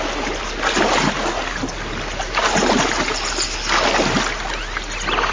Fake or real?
real